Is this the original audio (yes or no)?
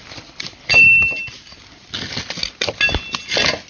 yes